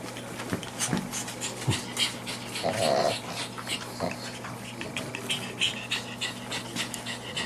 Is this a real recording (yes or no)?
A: yes